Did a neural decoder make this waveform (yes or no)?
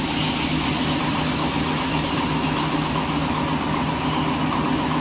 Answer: no